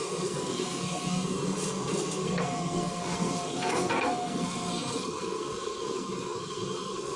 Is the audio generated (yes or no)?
yes